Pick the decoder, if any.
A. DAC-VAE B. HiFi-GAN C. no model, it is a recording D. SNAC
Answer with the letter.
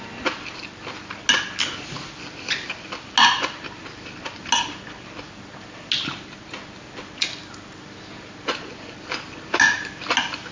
C